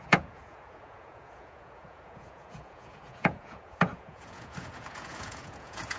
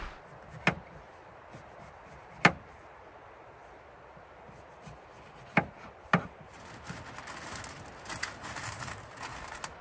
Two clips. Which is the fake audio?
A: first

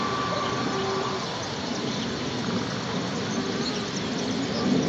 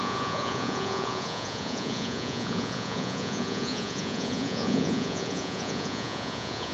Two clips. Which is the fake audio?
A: second